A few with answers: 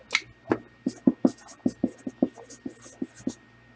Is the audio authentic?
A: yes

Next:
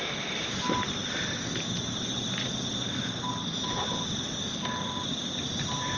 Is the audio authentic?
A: yes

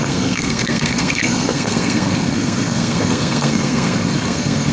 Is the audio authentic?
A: no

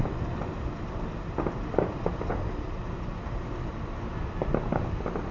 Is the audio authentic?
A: yes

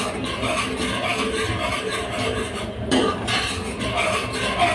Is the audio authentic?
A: yes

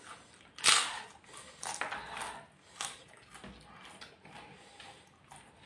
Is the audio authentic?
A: yes